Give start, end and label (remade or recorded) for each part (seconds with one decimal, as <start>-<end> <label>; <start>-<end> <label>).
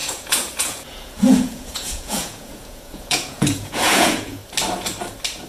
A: 0.0-4.4 remade; 4.4-5.5 recorded